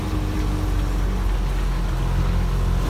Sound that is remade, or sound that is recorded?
recorded